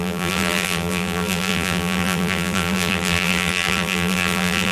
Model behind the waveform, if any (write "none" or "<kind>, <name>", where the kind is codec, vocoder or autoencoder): vocoder, BigVGAN v2